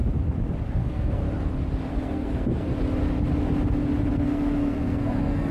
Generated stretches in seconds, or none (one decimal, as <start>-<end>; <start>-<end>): 0.7-1.2; 1.9-2.7; 4.1-5.5